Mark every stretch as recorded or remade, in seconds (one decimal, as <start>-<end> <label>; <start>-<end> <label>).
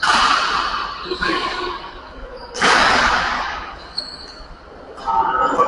0.0-1.1 recorded; 1.1-4.5 remade; 4.5-5.7 recorded